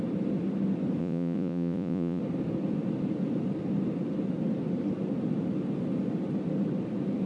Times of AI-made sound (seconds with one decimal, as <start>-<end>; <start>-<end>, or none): 1.0-2.2

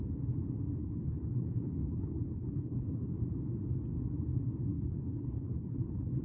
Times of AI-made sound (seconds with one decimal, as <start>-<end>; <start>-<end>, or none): 0.8-3.1; 4.7-6.2

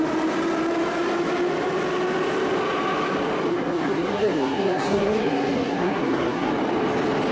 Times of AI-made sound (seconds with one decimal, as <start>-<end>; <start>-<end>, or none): 3.5-6.5

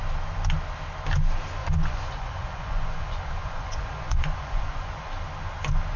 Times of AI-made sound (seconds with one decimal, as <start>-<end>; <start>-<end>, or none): 1.6-5.2

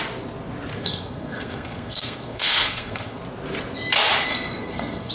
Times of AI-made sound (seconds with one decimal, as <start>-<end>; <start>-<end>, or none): 0.8-3.2; 4.3-5.1

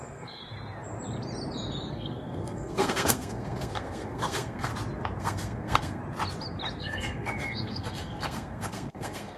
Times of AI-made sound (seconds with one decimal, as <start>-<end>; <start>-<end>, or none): 0.0-0.4; 1.9-4.7; 5.2-6.0; 6.8-9.4